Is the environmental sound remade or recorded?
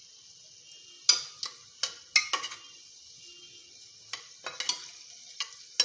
recorded